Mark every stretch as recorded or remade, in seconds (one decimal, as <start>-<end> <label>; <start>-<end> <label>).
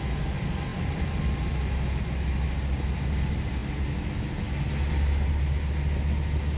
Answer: 0.0-6.6 recorded